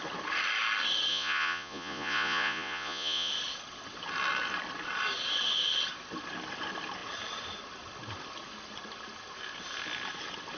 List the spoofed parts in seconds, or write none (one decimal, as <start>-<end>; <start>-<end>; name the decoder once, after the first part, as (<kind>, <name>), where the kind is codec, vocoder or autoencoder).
1.1-3.3 (vocoder, Vocos)